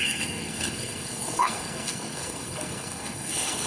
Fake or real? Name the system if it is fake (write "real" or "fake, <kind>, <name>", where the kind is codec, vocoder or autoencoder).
fake, codec, SNAC